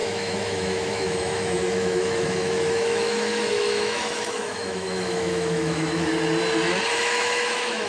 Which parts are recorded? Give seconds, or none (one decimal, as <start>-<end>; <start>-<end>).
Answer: 6.1-6.9